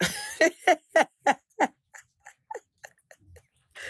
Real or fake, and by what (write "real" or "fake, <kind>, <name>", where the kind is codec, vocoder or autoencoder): real